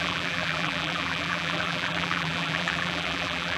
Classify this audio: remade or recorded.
remade